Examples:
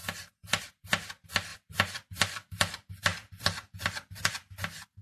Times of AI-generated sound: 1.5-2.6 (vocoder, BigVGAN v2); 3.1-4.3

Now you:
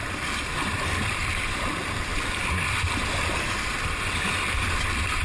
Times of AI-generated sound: 0.0-2.1 (vocoder, BigVGAN v2)